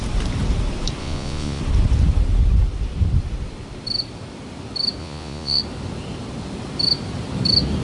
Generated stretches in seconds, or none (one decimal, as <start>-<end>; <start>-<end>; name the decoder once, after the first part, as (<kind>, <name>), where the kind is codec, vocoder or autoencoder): 1.0-1.6 (vocoder, Vocos); 5.0-5.6